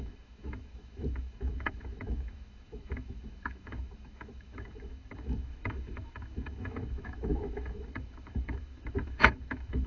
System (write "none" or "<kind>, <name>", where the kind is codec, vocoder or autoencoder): autoencoder, DAC-VAE